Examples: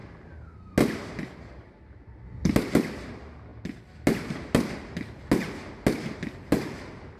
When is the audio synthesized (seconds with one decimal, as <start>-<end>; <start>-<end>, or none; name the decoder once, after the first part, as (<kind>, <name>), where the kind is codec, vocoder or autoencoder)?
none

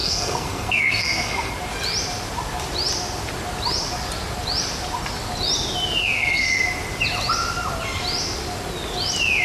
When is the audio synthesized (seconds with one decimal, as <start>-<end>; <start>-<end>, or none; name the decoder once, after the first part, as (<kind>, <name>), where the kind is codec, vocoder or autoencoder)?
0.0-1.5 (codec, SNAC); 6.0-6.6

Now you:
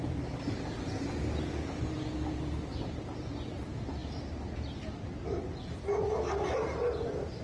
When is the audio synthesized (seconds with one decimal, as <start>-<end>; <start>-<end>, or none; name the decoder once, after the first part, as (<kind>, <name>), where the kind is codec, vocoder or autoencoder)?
none